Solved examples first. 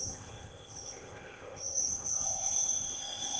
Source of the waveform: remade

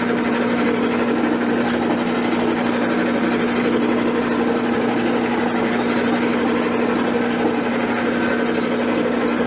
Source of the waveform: recorded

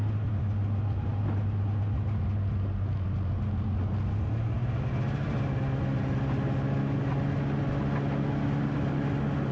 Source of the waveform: recorded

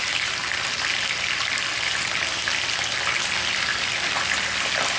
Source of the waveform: recorded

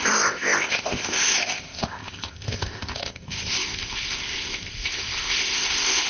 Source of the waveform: remade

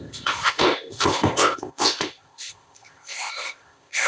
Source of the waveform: remade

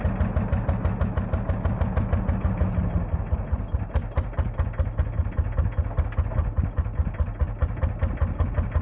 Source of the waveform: recorded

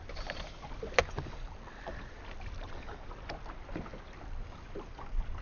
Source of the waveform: recorded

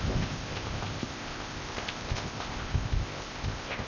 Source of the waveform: remade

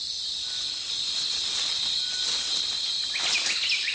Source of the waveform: recorded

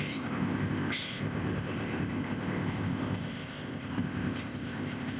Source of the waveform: remade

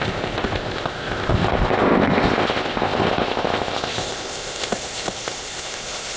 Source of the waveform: remade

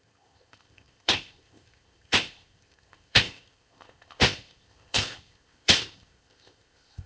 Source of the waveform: remade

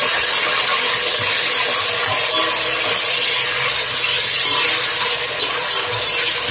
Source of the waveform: recorded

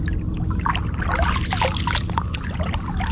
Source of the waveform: recorded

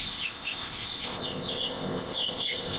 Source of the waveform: remade